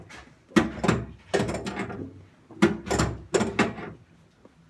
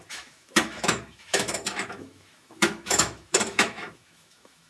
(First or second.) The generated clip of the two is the second